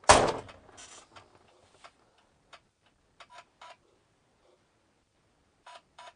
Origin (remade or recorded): recorded